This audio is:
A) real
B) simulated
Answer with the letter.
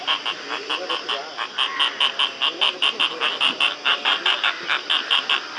A